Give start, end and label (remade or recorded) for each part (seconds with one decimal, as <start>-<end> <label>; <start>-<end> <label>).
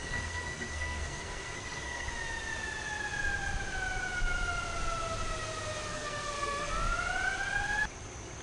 0.0-2.1 remade; 2.1-5.9 recorded; 5.9-6.7 remade; 6.7-8.4 recorded